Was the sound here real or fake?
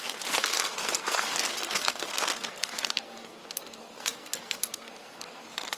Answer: fake